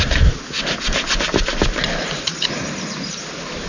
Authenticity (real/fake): real